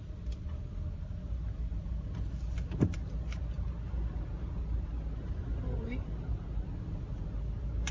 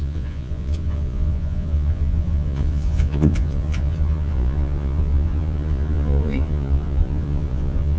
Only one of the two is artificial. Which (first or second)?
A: second